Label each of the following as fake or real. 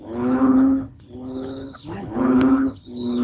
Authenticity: fake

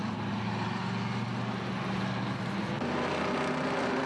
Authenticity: real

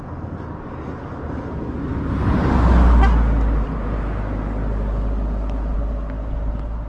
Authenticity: real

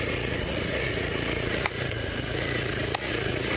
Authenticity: fake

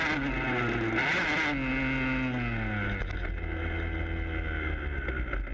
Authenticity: real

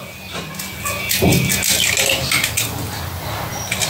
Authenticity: real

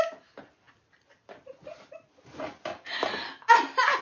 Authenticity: real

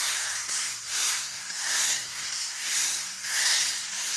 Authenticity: fake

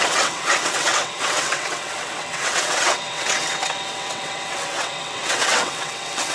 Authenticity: fake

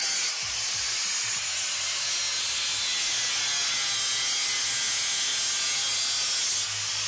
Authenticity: real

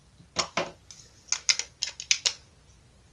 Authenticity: real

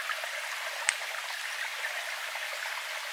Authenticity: real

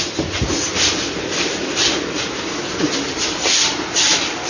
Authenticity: real